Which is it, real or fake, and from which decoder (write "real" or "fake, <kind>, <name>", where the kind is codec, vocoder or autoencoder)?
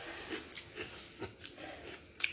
real